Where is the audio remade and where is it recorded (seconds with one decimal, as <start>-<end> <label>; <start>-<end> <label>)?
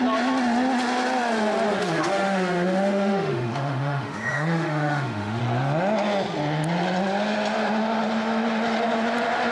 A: 0.0-1.8 recorded; 1.8-5.4 remade; 5.4-9.5 recorded